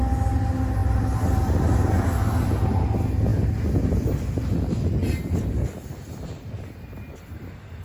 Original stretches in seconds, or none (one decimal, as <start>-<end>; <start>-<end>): 0.0-7.8